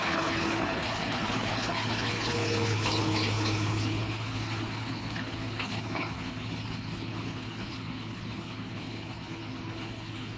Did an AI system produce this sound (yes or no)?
yes